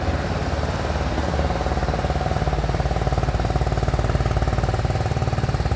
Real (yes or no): yes